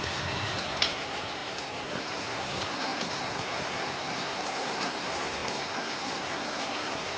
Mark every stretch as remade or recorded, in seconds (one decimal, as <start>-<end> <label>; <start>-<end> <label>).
0.0-7.2 remade